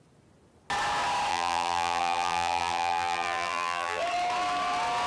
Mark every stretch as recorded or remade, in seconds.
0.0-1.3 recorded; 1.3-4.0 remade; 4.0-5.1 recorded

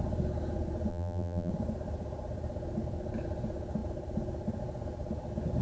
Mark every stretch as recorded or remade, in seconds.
0.0-0.9 recorded; 0.9-1.5 remade; 1.5-5.6 recorded

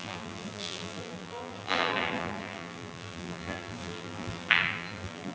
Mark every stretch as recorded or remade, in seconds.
0.0-5.3 remade

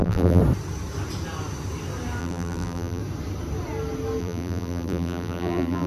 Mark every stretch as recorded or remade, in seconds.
0.0-0.4 remade; 0.4-2.2 recorded; 2.2-3.0 remade; 3.0-4.2 recorded; 4.2-5.9 remade

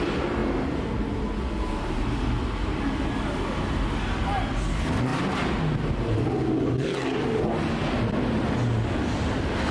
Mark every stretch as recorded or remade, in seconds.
0.0-9.7 recorded

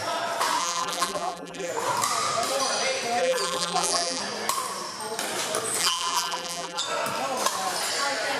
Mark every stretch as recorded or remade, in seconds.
0.0-0.6 recorded; 0.6-1.7 remade; 1.7-3.2 recorded; 3.2-4.2 remade; 4.2-5.8 recorded; 5.8-6.8 remade; 6.8-8.4 recorded